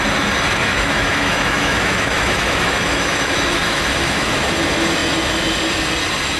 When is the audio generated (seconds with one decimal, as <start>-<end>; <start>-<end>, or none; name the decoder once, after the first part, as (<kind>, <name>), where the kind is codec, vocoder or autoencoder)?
0.6-4.3 (autoencoder, DAC-VAE)